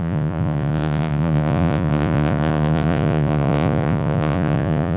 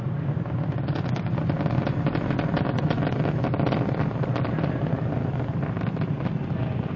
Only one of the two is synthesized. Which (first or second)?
first